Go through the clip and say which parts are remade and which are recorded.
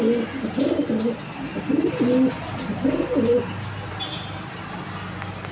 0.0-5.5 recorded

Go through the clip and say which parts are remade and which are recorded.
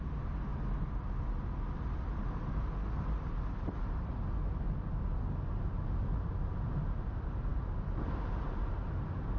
0.0-9.4 recorded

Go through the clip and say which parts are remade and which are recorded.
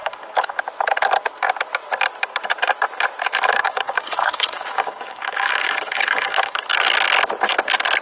0.0-0.6 remade; 0.6-3.5 recorded; 3.5-6.6 remade; 6.6-8.0 recorded